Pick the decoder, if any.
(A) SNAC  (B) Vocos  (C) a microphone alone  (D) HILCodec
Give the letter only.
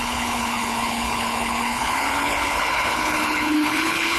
D